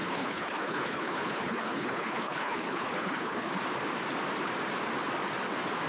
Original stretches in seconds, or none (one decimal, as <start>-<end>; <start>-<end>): 3.5-5.9